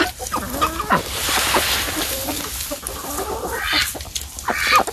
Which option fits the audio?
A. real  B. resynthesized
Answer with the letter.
A